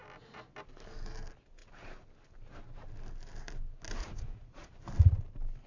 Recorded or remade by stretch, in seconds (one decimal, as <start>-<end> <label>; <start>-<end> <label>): 0.0-4.0 recorded; 4.0-4.7 remade; 4.7-5.7 recorded